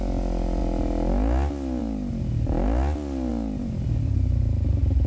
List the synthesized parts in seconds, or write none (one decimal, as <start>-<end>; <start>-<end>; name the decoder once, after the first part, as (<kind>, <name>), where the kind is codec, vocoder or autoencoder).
3.3-4.4 (vocoder, BigVGAN v2)